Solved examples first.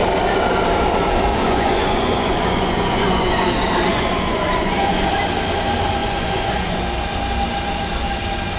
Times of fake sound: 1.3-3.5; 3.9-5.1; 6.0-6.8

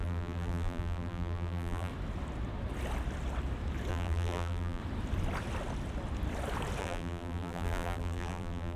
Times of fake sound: 0.0-1.9; 3.9-4.8; 6.8-8.8